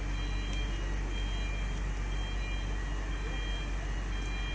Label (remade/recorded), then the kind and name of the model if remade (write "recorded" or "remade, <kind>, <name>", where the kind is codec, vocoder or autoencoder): recorded